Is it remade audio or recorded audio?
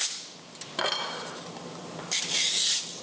remade